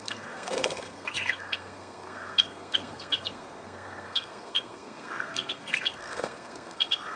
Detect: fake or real fake